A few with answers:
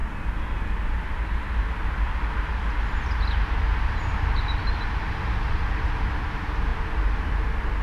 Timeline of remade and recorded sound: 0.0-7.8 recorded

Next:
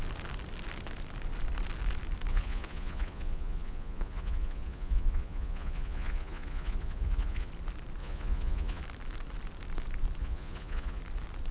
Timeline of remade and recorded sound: 0.0-2.3 recorded; 2.3-7.5 remade; 7.5-8.0 recorded; 8.0-8.8 remade; 8.8-10.2 recorded; 10.2-11.0 remade; 11.0-11.5 recorded

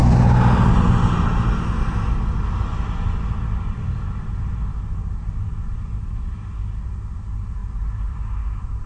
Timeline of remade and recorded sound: 0.0-8.9 recorded

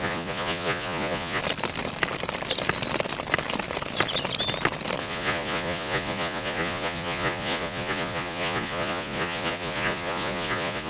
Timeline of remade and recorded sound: 0.0-1.4 remade; 1.4-5.0 recorded; 5.0-10.9 remade

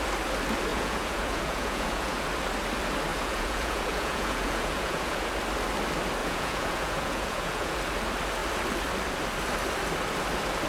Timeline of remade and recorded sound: 0.0-0.7 recorded; 0.7-2.2 remade; 2.2-3.1 recorded; 3.1-5.3 remade; 5.3-6.2 recorded; 6.2-7.8 remade; 7.8-10.7 recorded

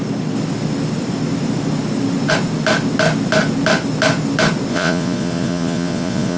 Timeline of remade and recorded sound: 0.0-4.7 recorded; 4.7-6.4 remade